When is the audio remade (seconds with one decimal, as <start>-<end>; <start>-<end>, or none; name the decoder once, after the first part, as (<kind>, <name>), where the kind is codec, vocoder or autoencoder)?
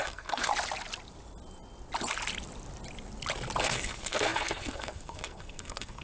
0.0-0.5 (codec, SNAC); 3.6-6.0